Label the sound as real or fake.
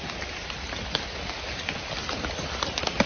real